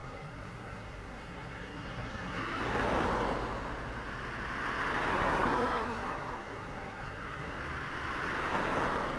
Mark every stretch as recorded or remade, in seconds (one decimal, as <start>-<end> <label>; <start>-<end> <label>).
0.0-2.6 remade; 2.6-5.1 recorded; 5.1-7.6 remade; 7.6-9.2 recorded